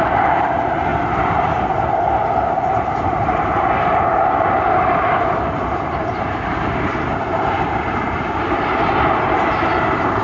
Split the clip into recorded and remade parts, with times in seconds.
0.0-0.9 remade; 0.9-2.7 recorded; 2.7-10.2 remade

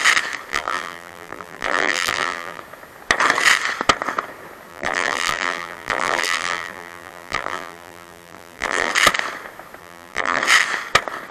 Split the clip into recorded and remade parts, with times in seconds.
0.0-0.5 recorded; 0.5-2.6 remade; 2.6-4.7 recorded; 4.7-8.9 remade; 8.9-9.8 recorded; 9.8-10.4 remade; 10.4-11.3 recorded